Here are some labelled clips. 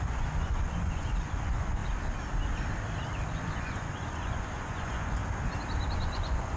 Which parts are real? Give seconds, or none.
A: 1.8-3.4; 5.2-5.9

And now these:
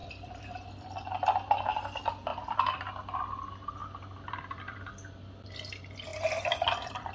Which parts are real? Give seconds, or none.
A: 1.1-2.3; 3.0-3.8; 4.9-6.1

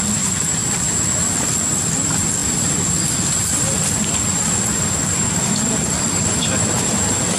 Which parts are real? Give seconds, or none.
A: 0.6-1.9

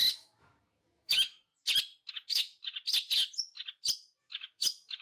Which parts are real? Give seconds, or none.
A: 1.5-2.1; 2.6-4.2